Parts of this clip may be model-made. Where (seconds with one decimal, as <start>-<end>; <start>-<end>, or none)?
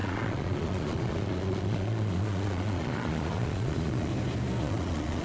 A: 0.0-4.1; 4.6-5.2